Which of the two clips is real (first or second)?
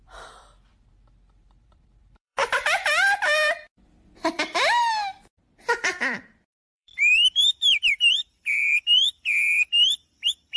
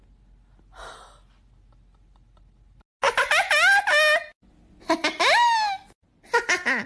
second